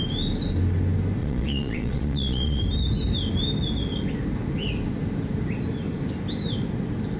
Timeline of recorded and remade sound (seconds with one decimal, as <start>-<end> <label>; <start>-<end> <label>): 0.0-1.2 recorded; 1.2-2.6 remade; 2.6-7.2 recorded